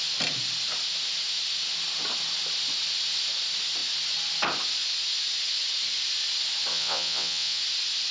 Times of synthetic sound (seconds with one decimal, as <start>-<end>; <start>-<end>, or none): 6.7-7.6